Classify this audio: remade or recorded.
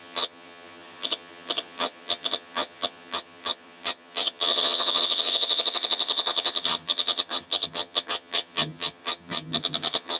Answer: remade